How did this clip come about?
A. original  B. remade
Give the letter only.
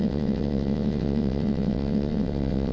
B